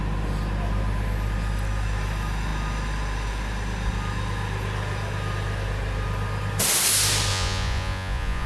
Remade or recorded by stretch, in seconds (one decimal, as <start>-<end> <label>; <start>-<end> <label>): 0.0-7.3 recorded; 7.3-8.5 remade